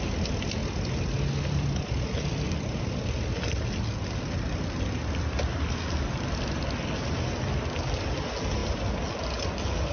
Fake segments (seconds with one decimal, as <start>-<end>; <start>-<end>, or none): none